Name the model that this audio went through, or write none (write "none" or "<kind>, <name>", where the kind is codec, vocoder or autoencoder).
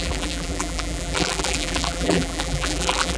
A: vocoder, BigVGAN v2